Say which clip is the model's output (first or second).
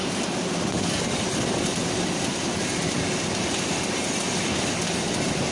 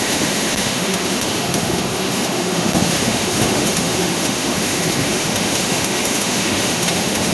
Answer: second